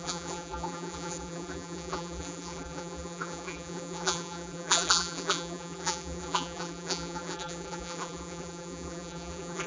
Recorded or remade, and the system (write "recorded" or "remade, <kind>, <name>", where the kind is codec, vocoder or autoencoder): remade, vocoder, BigVGAN v2